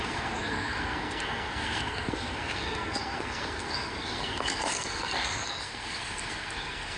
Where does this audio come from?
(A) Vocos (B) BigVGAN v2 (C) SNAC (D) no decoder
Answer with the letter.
C